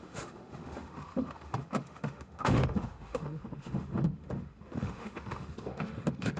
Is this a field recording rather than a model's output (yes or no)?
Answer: no